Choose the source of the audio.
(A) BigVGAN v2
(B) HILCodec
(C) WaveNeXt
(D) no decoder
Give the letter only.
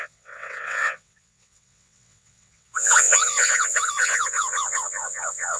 C